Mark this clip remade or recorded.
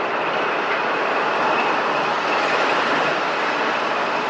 recorded